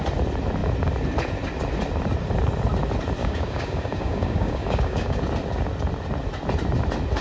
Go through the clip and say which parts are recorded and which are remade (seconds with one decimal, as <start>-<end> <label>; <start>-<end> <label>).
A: 0.0-3.2 recorded; 3.2-5.2 remade; 5.2-7.2 recorded